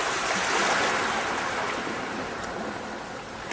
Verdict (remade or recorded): recorded